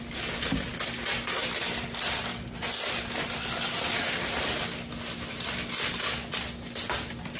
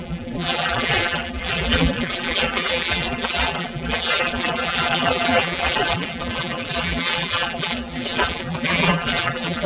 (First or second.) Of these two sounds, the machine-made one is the second